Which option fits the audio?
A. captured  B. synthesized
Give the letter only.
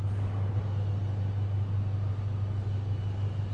A